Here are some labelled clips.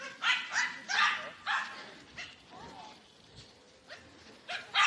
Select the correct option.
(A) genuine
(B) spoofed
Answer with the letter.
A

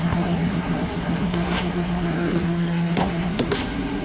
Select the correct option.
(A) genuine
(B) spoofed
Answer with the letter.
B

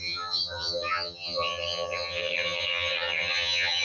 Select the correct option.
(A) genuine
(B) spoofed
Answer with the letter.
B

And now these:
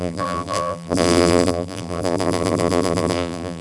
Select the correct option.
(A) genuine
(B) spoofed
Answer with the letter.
B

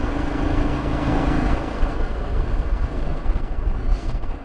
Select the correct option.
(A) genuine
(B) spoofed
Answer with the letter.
B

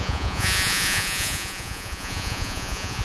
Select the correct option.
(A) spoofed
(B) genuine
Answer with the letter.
A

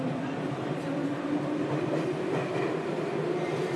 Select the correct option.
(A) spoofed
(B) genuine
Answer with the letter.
A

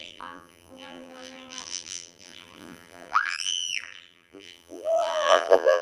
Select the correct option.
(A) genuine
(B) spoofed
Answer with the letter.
B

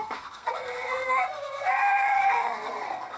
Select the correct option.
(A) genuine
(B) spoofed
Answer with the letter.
B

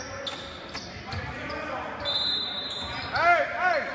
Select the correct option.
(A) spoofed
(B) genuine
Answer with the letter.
B